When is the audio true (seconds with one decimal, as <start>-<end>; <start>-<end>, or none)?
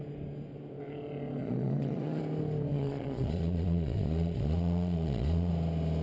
0.0-1.4; 2.2-2.7; 5.5-6.0